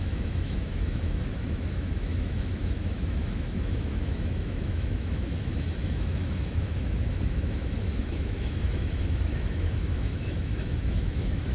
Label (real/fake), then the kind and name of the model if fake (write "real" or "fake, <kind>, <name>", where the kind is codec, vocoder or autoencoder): fake, autoencoder, DAC-VAE